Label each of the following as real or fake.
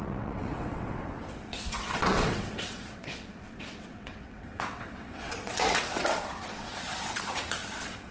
fake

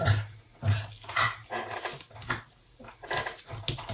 real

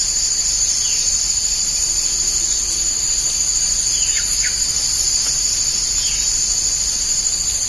real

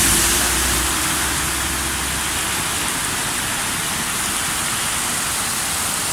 real